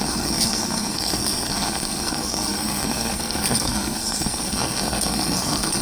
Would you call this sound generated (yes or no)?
yes